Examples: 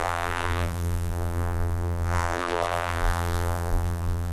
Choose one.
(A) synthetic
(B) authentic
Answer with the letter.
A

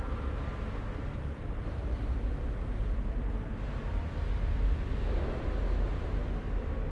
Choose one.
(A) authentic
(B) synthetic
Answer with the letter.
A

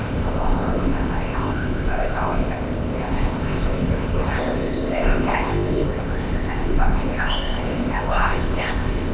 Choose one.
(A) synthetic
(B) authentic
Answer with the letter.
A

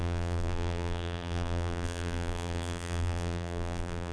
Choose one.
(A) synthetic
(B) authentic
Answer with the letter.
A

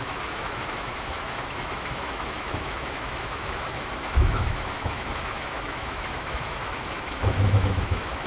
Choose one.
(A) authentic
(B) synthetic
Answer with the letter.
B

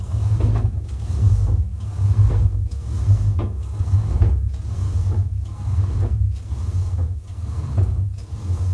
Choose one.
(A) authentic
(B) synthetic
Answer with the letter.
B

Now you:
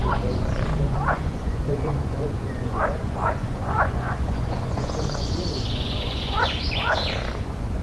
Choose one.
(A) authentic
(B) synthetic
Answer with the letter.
B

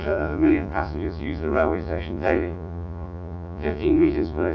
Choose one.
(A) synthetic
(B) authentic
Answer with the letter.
A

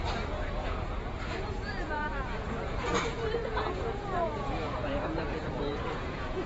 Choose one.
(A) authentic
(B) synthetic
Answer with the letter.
B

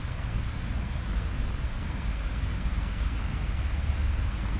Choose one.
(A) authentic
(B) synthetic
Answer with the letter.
B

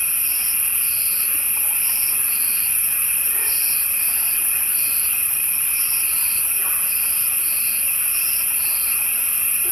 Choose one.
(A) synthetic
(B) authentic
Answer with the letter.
A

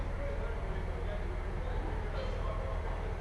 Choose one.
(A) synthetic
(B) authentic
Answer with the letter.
B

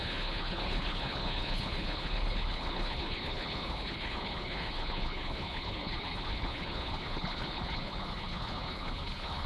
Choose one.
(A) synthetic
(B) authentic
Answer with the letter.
A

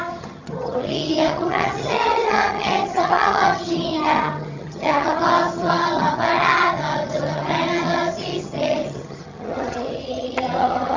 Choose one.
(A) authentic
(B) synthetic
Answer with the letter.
B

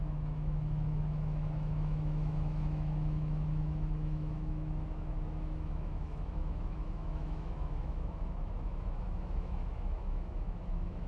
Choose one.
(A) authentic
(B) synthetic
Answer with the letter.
B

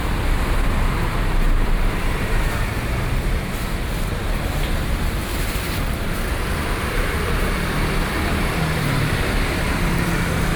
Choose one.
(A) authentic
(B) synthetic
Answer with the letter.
B